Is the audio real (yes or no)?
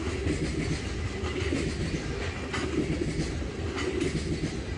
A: yes